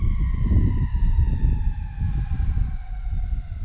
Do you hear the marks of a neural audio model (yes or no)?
no